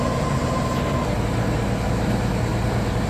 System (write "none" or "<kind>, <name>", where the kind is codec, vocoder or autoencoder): none